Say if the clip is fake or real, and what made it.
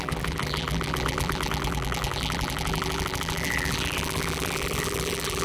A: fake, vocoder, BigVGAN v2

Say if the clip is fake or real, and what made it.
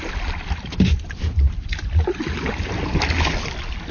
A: real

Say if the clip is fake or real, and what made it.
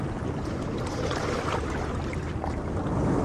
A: real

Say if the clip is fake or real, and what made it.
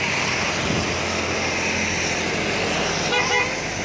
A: real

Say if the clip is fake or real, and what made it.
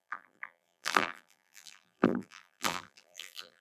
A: fake, vocoder, BigVGAN v2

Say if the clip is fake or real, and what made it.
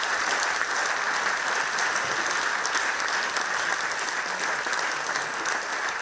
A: real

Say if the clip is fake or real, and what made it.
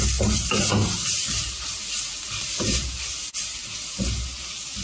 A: real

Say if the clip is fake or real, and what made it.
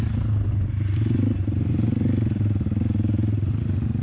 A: real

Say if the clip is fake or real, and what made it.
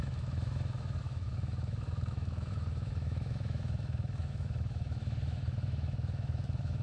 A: fake, autoencoder, DAC-VAE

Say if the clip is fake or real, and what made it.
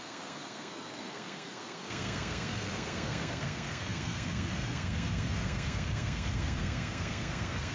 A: fake, codec, SNAC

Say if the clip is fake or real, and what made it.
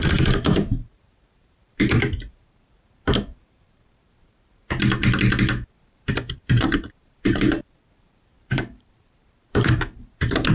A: fake, vocoder, BigVGAN v2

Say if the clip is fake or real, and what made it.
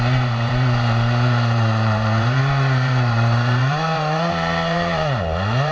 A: fake, vocoder, BigVGAN v2